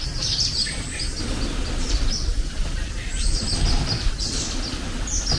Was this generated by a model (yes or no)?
yes